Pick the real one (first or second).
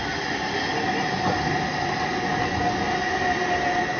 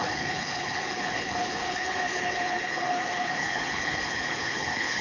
first